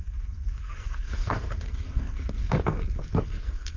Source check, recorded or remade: remade